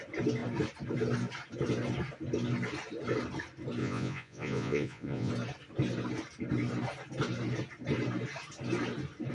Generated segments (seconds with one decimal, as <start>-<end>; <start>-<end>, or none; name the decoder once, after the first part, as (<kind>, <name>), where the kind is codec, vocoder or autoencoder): 3.8-5.3 (vocoder, Vocos)